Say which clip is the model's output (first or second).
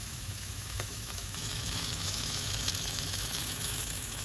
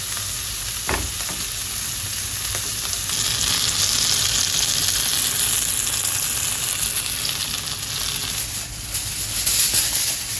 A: first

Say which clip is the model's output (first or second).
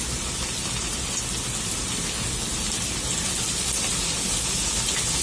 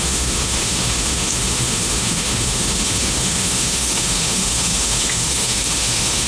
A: second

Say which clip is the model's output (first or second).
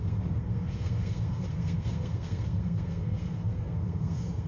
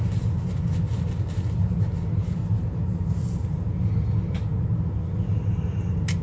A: first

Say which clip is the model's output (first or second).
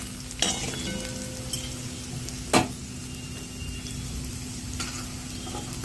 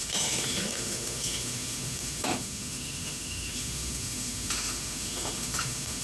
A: second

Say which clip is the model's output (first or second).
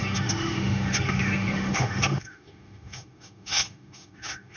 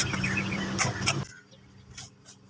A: first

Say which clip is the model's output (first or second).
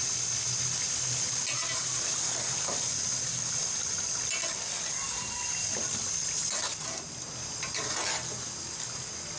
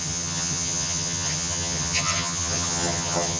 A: second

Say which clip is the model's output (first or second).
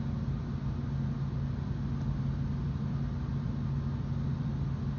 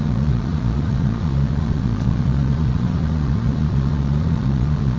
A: second